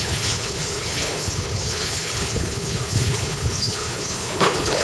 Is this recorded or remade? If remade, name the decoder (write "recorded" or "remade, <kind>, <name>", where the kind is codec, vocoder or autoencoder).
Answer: remade, codec, HILCodec